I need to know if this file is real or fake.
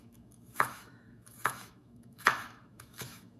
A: fake